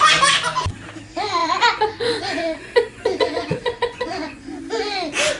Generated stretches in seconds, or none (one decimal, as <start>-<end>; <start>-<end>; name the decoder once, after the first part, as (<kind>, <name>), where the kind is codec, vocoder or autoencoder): 1.4-4.6 (vocoder, Vocos)